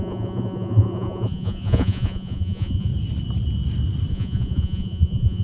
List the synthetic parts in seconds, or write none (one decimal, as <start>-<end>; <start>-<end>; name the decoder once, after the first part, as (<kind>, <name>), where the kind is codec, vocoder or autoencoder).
0.0-2.9 (vocoder, Vocos); 4.1-5.4